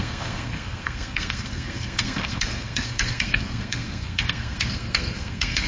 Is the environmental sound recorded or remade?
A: remade